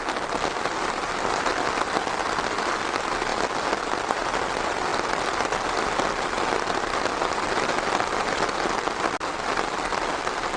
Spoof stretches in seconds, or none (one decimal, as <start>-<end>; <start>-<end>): 3.3-4.2